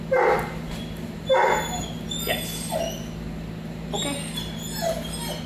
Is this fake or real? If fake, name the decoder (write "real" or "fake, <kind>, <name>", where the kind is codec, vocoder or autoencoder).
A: real